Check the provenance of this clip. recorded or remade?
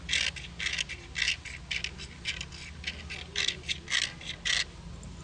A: recorded